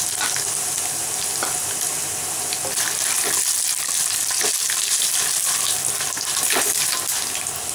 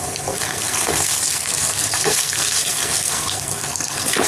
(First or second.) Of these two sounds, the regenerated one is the second